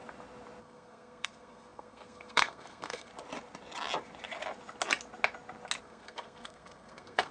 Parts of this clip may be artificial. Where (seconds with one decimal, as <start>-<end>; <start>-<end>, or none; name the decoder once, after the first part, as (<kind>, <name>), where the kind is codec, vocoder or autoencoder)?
0.6-3.1 (codec, SNAC); 5.8-7.3